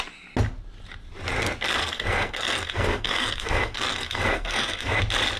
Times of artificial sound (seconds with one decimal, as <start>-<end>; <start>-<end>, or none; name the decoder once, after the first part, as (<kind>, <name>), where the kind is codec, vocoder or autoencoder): 1.8-5.0 (codec, SNAC)